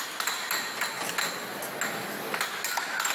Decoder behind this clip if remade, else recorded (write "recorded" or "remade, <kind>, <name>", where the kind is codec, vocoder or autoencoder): recorded